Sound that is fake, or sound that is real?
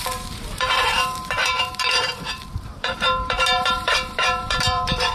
fake